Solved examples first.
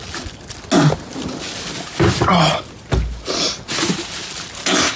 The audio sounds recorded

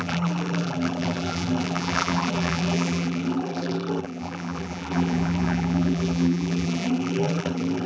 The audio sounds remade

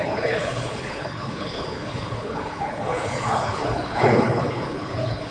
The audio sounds remade